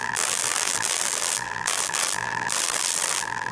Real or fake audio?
fake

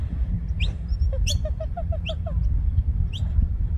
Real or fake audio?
fake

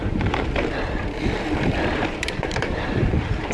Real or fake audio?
fake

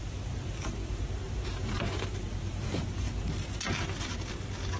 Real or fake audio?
real